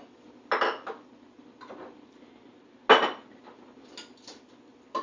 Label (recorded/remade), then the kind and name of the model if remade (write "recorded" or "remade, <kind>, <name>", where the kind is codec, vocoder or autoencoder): recorded